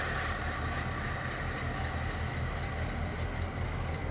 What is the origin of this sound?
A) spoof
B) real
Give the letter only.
B